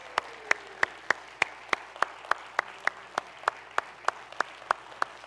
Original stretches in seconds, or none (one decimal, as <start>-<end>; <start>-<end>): 0.0-5.3